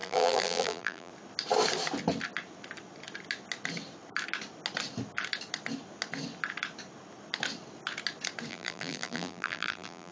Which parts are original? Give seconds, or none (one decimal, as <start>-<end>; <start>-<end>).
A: 1.1-8.5